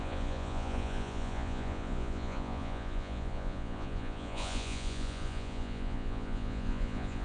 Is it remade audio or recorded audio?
remade